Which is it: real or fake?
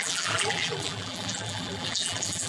fake